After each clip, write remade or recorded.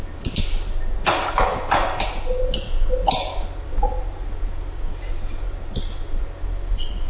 recorded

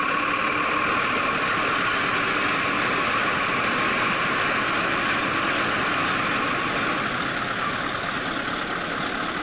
recorded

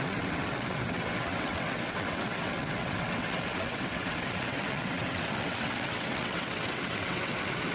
remade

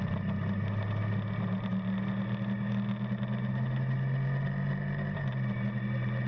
recorded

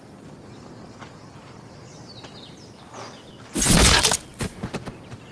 recorded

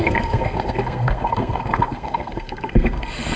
remade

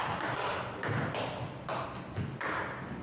recorded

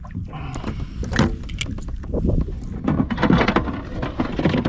recorded